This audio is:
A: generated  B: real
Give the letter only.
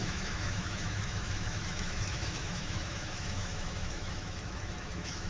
A